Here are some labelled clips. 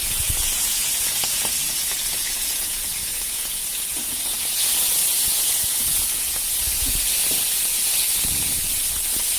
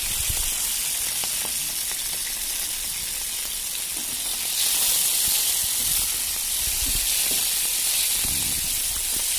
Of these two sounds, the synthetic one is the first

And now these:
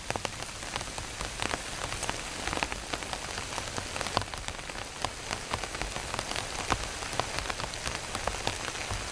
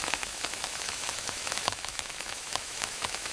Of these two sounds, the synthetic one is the second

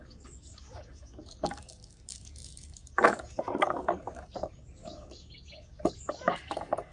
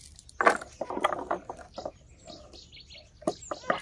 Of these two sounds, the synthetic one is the first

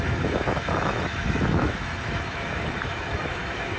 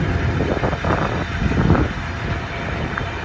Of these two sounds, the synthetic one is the first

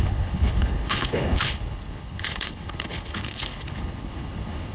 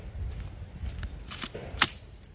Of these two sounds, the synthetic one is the first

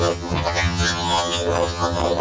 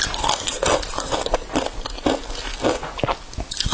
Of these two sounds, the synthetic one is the first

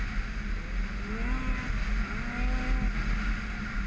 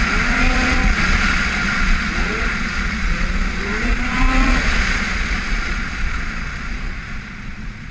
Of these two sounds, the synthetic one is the second